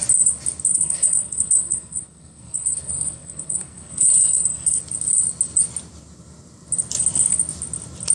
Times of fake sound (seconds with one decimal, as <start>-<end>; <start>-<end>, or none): 0.7-4.8

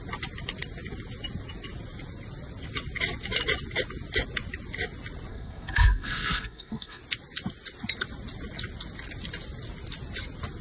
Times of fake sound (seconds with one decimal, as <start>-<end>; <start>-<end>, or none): 5.3-7.0

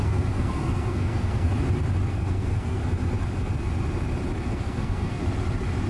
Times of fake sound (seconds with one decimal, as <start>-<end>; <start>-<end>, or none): 0.0-1.5; 2.1-2.8; 4.5-5.2

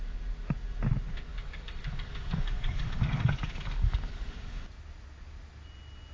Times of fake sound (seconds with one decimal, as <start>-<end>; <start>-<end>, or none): 1.3-4.6

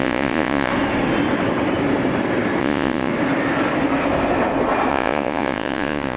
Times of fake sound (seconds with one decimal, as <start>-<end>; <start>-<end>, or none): 0.0-0.7; 2.6-3.1; 4.9-6.2